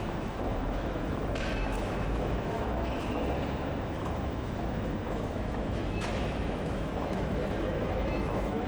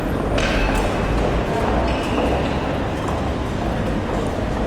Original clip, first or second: second